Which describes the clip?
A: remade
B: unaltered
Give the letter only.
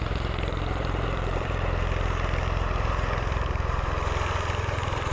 A